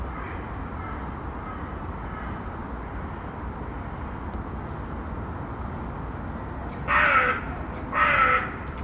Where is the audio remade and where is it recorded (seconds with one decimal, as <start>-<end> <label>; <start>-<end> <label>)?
0.0-8.8 recorded